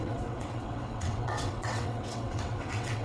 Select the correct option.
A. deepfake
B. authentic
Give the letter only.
A